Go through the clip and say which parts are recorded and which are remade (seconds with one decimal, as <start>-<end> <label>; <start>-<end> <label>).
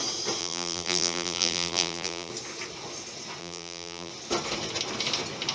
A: 0.0-0.4 recorded; 0.4-2.3 remade; 2.3-3.4 recorded; 3.4-4.1 remade; 4.1-5.5 recorded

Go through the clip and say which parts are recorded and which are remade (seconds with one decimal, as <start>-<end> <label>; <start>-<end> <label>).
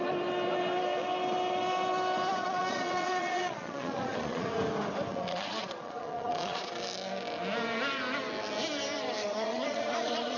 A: 0.0-2.4 recorded; 2.4-4.5 remade; 4.5-5.1 recorded; 5.1-6.7 remade; 6.7-9.2 recorded; 9.2-10.4 remade